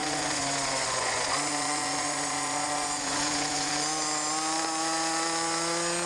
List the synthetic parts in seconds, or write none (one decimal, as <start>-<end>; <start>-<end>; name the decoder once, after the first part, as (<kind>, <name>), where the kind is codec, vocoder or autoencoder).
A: 0.0-3.7 (vocoder, Vocos)